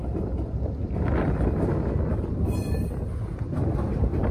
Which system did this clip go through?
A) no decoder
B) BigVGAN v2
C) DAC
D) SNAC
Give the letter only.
A